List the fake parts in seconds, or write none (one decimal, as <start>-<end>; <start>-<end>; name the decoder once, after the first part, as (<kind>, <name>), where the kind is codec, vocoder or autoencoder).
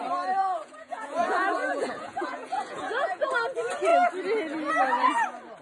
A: 0.4-3.3 (vocoder, Vocos)